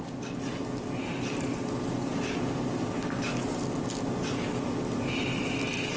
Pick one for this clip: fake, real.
real